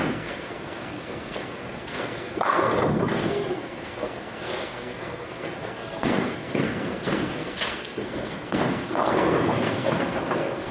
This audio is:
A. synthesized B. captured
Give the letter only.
A